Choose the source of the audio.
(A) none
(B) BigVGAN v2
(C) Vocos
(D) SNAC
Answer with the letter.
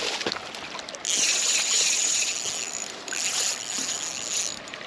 A